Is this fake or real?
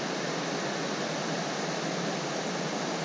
real